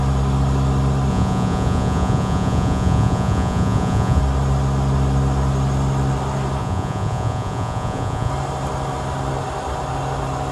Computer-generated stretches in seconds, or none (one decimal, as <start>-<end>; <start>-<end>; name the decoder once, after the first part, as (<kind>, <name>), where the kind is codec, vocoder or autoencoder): 1.1-4.2 (vocoder, Vocos); 6.6-8.3